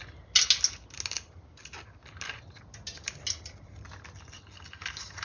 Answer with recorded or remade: recorded